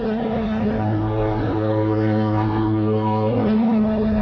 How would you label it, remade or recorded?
remade